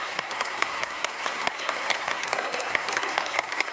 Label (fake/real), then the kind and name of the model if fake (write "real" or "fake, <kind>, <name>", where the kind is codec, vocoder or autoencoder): fake, codec, SNAC